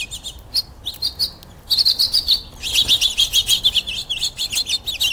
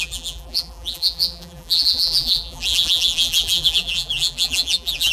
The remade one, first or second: second